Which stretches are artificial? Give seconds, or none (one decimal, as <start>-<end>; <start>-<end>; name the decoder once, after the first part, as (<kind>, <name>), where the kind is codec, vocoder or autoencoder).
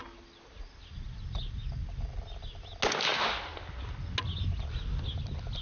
none